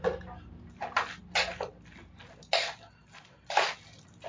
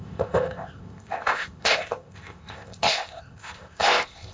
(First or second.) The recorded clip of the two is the first